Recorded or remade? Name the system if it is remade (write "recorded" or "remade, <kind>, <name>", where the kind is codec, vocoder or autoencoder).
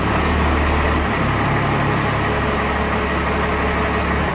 recorded